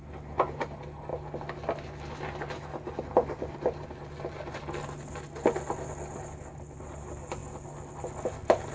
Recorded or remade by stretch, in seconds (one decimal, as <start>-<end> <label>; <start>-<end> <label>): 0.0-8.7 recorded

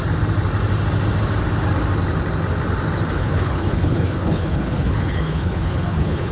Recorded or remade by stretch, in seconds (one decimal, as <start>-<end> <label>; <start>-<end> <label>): 0.0-3.2 recorded; 3.2-6.3 remade

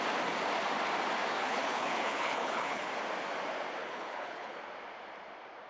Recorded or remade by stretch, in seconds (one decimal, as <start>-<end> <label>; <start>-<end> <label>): 0.0-1.4 recorded; 1.4-2.9 remade; 2.9-3.8 recorded; 3.8-4.6 remade; 4.6-5.7 recorded